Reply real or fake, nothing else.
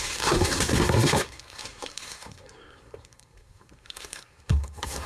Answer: fake